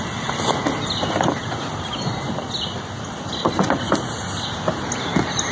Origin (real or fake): real